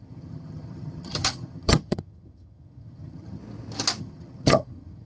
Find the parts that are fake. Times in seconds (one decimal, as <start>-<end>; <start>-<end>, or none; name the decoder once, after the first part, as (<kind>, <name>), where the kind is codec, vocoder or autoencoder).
0.0-3.4 (vocoder, HiFi-GAN); 4.0-5.0